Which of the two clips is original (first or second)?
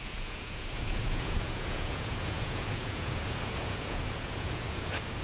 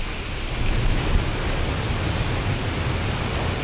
second